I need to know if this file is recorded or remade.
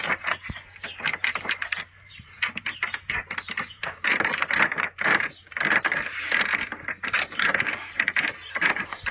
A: remade